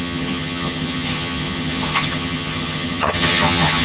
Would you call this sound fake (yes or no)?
yes